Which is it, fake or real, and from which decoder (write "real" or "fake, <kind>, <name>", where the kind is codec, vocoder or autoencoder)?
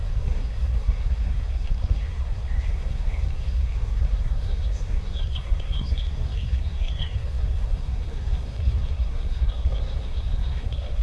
fake, codec, SNAC